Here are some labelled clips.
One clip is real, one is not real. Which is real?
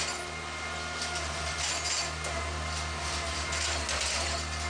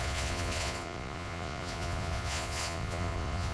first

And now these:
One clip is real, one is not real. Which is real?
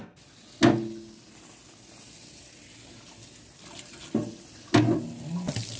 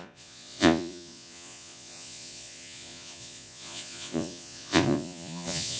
first